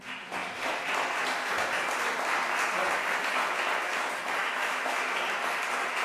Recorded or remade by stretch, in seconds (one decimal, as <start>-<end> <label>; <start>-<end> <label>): 0.0-4.4 recorded; 4.4-5.0 remade; 5.0-6.0 recorded